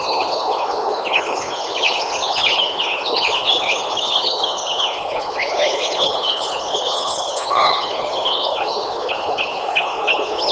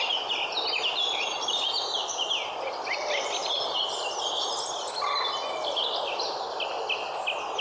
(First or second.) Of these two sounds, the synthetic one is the first